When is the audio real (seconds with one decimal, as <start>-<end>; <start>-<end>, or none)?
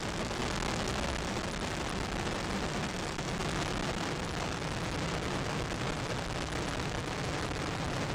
0.4-1.2; 3.4-3.9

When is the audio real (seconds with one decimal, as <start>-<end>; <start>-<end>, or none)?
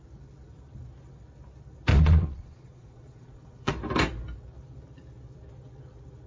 0.0-1.9; 3.7-6.3